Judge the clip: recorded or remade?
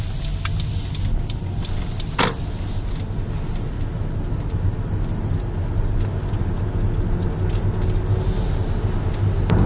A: recorded